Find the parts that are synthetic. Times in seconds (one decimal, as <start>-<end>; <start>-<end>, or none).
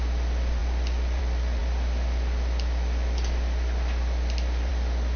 none